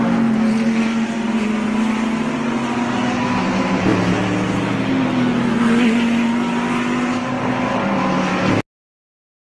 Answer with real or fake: real